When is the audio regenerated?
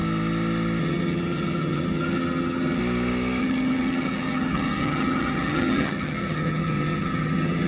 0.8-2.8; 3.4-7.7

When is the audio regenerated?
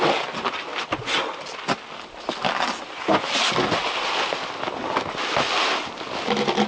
none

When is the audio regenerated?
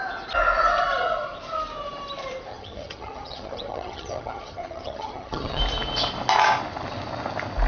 2.5-5.6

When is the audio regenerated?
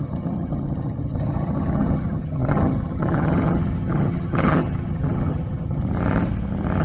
0.0-5.8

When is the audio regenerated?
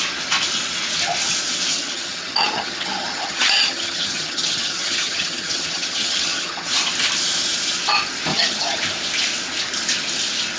1.7-6.7; 8.3-8.8